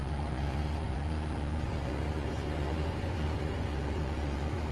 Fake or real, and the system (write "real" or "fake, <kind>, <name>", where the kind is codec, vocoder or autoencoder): fake, vocoder, Vocos